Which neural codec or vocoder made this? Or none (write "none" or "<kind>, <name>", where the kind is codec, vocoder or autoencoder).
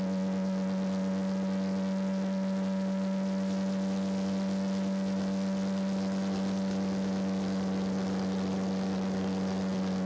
none